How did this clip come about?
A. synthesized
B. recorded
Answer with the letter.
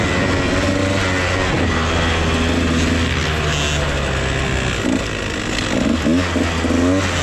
B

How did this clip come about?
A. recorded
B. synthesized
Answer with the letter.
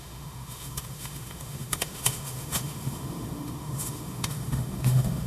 B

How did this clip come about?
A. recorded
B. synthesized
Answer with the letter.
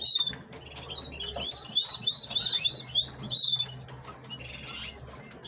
A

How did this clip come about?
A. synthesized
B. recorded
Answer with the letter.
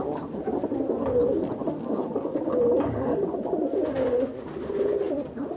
B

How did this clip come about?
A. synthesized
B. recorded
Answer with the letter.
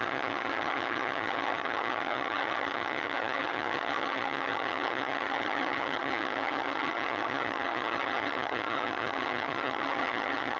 A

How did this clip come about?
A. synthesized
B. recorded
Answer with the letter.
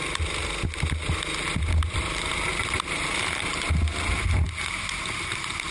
B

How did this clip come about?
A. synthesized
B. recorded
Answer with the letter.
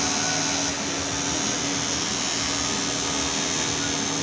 B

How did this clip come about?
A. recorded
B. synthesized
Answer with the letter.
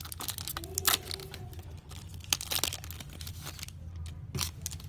A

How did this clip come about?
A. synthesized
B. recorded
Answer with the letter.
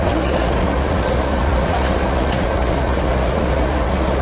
A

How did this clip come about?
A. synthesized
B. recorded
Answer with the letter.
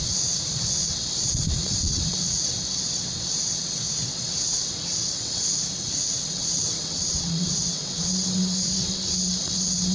A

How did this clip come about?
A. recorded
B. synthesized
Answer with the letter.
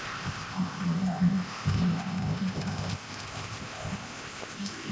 B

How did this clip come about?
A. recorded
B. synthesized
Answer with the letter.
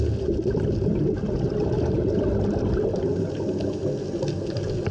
A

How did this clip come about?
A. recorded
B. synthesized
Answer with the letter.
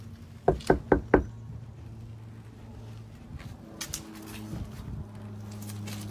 A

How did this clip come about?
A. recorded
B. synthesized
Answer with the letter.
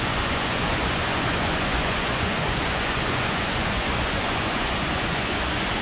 B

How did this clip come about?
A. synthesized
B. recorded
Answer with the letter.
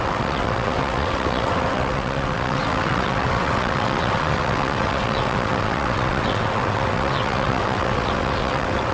A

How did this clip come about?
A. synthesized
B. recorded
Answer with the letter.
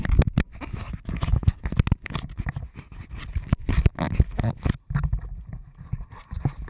B